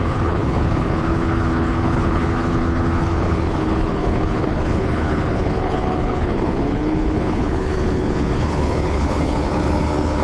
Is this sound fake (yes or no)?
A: yes